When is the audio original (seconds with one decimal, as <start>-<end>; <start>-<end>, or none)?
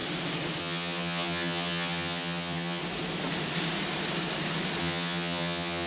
0.0-0.6; 2.8-4.8